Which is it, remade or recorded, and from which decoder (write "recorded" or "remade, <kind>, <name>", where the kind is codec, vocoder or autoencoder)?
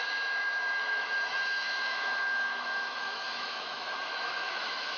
remade, autoencoder, DAC-VAE